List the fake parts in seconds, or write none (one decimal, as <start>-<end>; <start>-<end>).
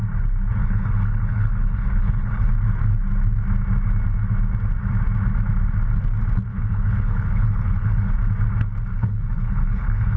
0.6-2.5; 6.5-8.1; 8.9-10.2